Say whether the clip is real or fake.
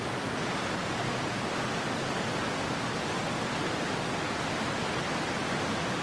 real